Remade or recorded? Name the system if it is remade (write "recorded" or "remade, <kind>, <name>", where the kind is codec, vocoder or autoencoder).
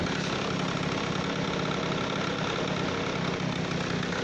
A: recorded